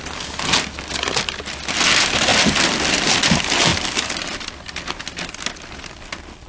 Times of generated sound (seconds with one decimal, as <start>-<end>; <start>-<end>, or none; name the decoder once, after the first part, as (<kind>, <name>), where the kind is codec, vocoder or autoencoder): none